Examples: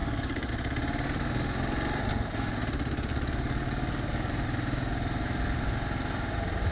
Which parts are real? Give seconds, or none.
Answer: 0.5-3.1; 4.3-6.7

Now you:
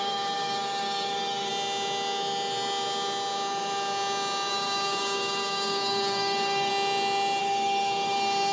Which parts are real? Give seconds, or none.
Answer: 1.5-4.5; 6.7-7.4

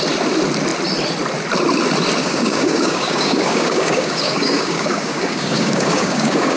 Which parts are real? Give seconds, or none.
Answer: 0.0-2.2

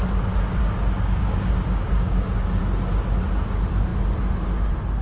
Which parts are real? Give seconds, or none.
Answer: 0.0-0.6; 2.6-5.0

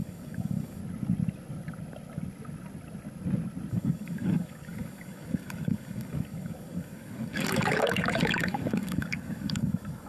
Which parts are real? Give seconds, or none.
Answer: 0.8-3.7

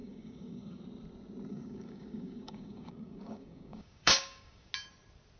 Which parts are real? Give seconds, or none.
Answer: 0.8-1.5; 4.7-5.4

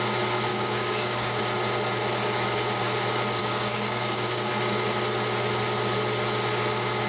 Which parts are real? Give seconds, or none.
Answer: 0.0-0.5; 1.4-3.4; 4.5-7.1

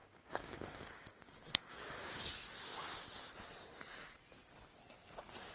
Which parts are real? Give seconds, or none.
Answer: 2.4-5.5